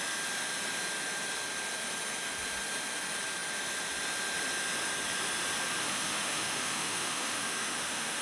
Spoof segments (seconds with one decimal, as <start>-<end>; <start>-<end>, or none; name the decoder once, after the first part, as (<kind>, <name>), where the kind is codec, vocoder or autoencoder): 5.8-8.2 (autoencoder, DAC-VAE)